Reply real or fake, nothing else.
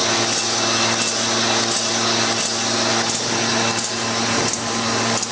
real